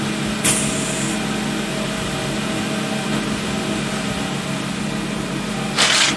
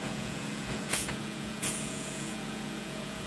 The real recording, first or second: first